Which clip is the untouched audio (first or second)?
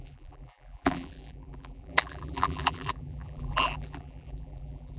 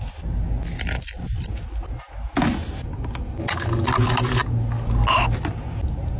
second